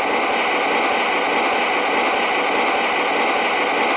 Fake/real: real